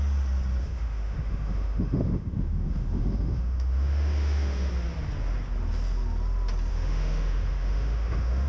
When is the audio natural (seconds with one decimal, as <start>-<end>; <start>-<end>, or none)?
0.0-0.6; 4.7-6.7